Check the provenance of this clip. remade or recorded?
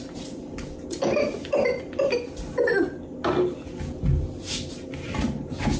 recorded